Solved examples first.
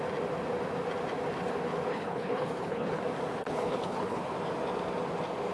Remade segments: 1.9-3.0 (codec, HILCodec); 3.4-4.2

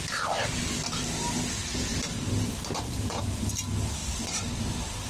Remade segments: 1.9-3.2 (vocoder, BigVGAN v2); 4.0-5.1

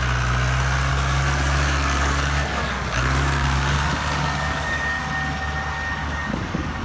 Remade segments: 0.9-5.0 (codec, DAC); 6.0-6.8

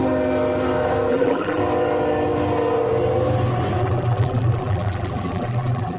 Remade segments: 1.1-1.6 (vocoder, BigVGAN v2); 3.8-6.0

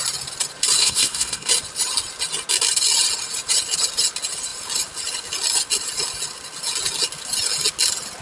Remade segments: 0.8-1.5 (codec, SNAC)

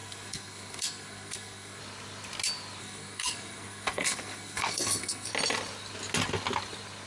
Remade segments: 0.0-1.8 (codec, SNAC); 2.8-5.3